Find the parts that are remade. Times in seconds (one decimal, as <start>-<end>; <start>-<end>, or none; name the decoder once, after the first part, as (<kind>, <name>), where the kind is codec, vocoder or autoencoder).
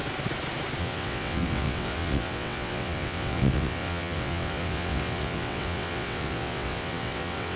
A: 0.8-7.6 (vocoder, WaveNeXt)